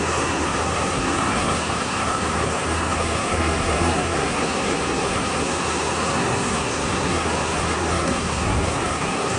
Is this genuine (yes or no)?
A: no